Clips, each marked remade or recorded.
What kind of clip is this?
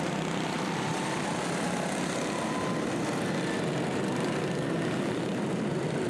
recorded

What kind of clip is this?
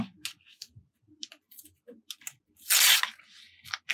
recorded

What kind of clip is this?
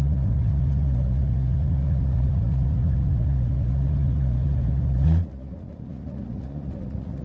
remade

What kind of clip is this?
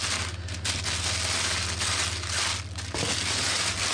recorded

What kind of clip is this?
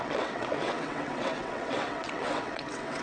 remade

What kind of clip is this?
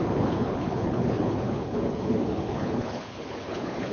remade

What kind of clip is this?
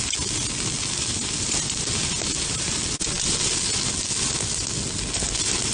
recorded